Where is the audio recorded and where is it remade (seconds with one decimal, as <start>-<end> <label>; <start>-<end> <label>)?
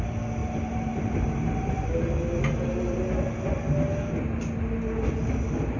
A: 0.0-0.4 recorded; 0.4-3.1 remade; 3.1-5.8 recorded